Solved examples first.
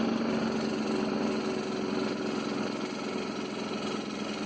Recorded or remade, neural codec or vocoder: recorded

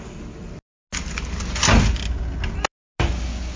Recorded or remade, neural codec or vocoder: recorded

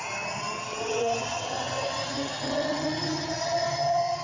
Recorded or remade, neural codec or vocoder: remade, vocoder, HiFi-GAN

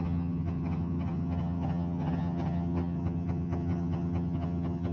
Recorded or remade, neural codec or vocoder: remade, vocoder, HiFi-GAN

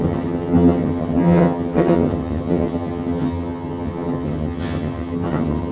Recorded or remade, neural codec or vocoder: remade, vocoder, HiFi-GAN